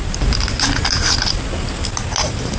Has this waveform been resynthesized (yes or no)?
no